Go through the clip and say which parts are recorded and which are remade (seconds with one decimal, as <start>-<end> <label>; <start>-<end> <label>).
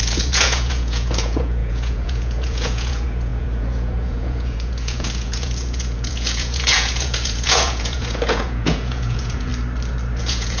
0.0-9.5 remade; 9.5-10.2 recorded; 10.2-10.6 remade